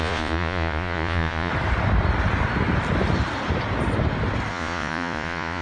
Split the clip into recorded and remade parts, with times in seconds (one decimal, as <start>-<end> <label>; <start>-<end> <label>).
0.0-1.5 remade; 1.5-4.5 recorded; 4.5-5.6 remade

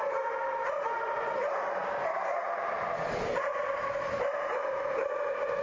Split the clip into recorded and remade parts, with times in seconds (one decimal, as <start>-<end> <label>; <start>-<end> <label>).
0.0-5.6 recorded

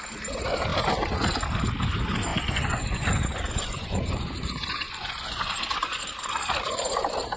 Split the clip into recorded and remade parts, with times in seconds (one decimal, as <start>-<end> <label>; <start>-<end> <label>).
0.0-2.3 recorded; 2.3-6.0 remade; 6.0-7.4 recorded

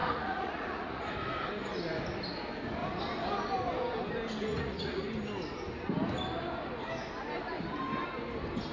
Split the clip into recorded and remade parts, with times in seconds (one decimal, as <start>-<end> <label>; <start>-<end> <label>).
0.0-1.0 remade; 1.0-4.5 recorded; 4.5-5.1 remade; 5.1-8.7 recorded

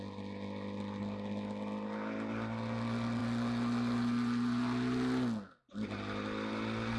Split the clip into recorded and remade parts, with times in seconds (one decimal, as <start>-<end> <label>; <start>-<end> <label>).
0.0-7.0 recorded

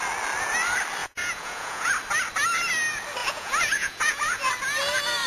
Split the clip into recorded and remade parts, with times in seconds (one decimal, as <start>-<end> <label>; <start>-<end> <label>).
0.0-1.0 recorded; 1.0-1.9 remade; 1.9-3.2 recorded; 3.2-4.5 remade; 4.5-5.3 recorded